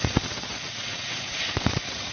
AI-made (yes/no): yes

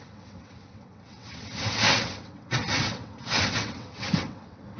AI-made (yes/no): yes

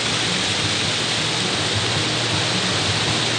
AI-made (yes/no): no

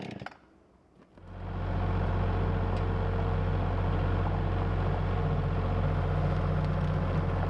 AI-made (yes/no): no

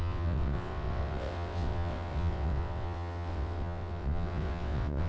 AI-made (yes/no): yes